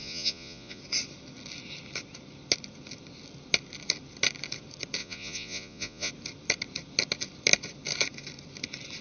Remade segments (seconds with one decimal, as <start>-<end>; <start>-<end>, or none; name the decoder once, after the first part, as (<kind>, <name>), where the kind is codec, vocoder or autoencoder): 0.0-0.8 (vocoder, Vocos); 5.0-6.1